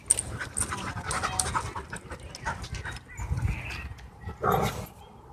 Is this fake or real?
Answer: real